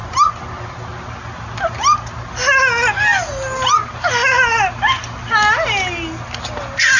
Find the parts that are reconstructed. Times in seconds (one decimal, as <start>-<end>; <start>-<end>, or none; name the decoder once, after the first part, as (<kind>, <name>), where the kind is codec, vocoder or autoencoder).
none